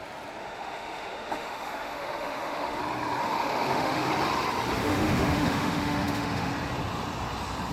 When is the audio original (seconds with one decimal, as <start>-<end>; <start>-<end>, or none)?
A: 0.0-0.4; 2.8-3.2; 4.1-4.8; 6.5-7.7